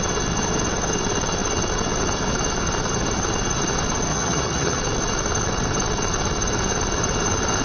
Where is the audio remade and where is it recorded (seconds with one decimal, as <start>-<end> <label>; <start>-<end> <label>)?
0.0-4.1 recorded; 4.1-4.8 remade; 4.8-7.6 recorded